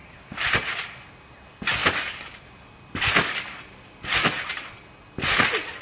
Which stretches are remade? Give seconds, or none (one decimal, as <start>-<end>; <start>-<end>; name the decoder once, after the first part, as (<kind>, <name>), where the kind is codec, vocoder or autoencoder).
1.8-2.8 (vocoder, BigVGAN v2)